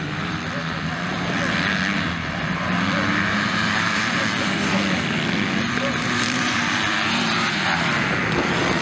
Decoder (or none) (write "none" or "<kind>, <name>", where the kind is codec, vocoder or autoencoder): vocoder, BigVGAN v2